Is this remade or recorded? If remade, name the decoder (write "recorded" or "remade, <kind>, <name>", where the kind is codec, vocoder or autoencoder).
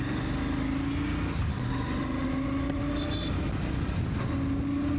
recorded